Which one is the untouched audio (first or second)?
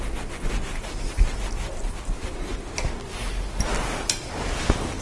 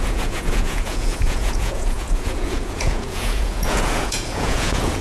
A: first